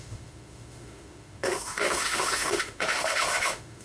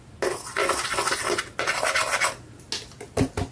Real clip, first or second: second